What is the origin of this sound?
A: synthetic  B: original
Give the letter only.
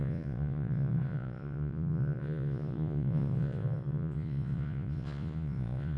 A